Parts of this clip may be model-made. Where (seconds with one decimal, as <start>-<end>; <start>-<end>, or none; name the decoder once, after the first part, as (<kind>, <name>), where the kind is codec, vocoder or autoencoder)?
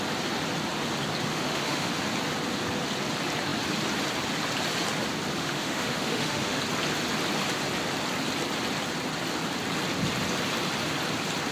1.3-1.9 (autoencoder, DAC-VAE); 5.4-6.6